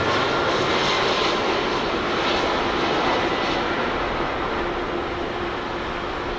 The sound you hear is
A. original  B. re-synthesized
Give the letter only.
A